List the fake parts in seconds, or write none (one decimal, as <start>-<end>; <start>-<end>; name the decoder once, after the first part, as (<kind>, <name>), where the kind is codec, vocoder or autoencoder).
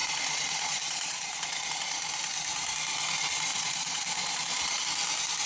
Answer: 0.0-1.7 (vocoder, Vocos); 3.5-4.8